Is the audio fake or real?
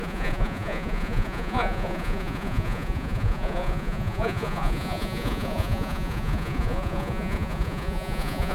fake